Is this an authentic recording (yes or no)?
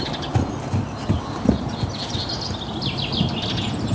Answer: yes